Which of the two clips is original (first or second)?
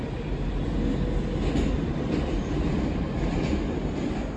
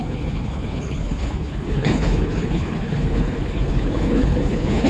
first